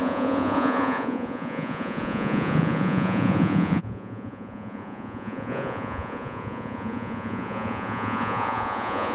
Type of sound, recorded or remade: remade